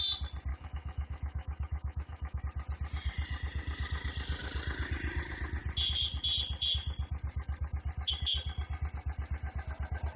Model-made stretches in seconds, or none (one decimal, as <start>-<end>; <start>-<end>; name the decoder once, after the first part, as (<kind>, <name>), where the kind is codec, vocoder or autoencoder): 0.5-2.4 (autoencoder, DAC-VAE)